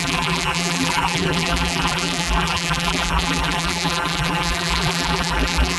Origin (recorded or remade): remade